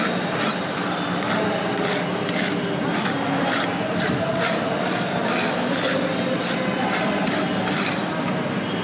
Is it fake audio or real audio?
real